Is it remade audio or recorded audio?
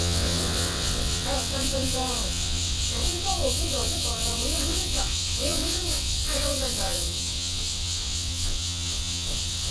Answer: remade